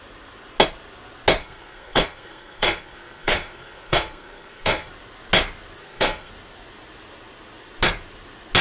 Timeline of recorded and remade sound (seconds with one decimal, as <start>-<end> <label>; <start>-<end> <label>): 0.0-1.4 recorded; 1.4-4.9 remade; 4.9-5.8 recorded; 5.8-6.3 remade; 6.3-8.6 recorded